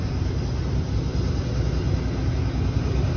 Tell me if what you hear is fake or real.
real